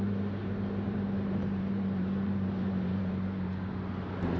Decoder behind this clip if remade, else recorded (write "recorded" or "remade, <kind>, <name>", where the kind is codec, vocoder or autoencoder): remade, vocoder, BigVGAN v2